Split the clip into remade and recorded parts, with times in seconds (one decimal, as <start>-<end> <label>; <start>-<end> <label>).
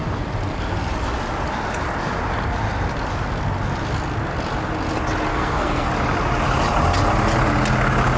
0.0-5.3 recorded; 5.3-5.9 remade; 5.9-8.2 recorded